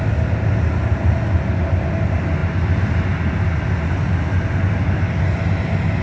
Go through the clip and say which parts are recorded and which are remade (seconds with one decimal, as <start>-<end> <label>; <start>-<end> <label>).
0.0-6.0 recorded